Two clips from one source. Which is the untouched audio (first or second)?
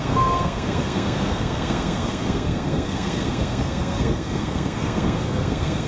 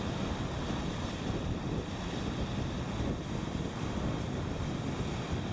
second